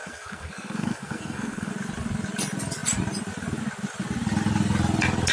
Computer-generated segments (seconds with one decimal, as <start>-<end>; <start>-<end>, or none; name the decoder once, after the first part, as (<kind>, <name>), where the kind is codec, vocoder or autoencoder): 0.0-1.7 (codec, SNAC)